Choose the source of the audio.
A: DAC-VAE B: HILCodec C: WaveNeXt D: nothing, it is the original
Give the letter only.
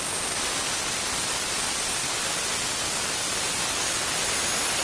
D